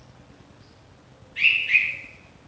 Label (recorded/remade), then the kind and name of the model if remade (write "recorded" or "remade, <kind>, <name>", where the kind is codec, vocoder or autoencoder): recorded